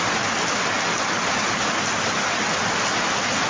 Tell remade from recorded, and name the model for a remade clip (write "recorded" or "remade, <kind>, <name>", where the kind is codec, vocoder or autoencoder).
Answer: recorded